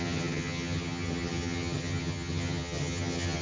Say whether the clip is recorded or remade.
remade